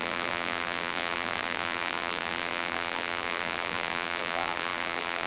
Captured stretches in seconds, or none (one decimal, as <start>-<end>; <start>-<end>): none